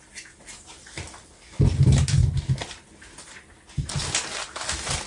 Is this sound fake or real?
real